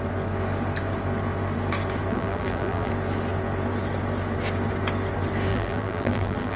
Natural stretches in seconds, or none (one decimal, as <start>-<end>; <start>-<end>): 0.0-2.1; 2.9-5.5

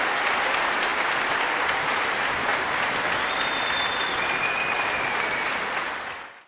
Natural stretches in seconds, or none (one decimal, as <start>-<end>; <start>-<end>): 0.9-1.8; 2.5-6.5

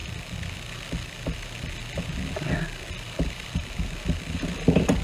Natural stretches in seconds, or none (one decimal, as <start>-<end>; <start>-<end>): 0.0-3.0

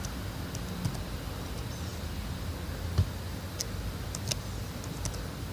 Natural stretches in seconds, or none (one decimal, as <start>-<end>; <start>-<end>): 0.0-5.5

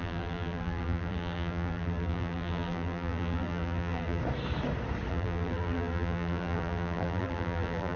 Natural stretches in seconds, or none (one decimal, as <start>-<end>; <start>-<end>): 4.2-5.1

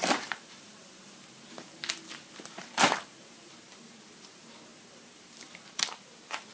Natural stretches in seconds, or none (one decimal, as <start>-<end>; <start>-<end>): 3.6-4.7; 6.1-6.5